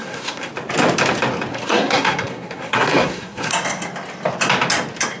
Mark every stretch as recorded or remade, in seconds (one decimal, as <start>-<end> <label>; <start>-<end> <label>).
0.0-0.5 remade; 0.5-1.5 recorded; 1.5-3.5 remade; 3.5-5.2 recorded